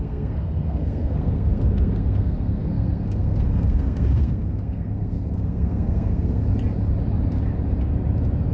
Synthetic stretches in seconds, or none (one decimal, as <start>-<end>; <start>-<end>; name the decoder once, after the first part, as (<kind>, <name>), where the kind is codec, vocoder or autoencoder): 0.0-6.5 (codec, SNAC)